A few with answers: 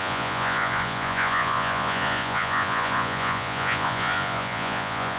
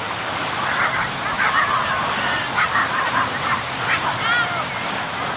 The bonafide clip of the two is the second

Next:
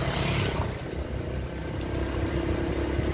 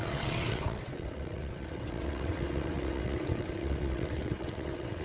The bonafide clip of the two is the first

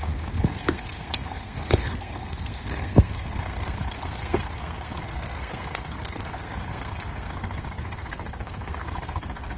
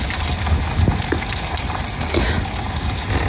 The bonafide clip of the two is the second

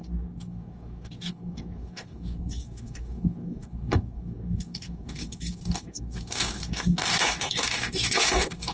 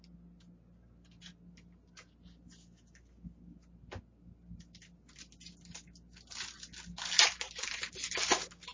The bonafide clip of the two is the second